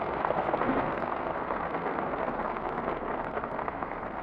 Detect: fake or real fake